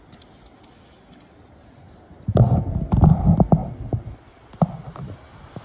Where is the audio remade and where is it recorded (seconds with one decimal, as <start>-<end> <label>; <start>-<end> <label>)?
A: 0.0-5.6 recorded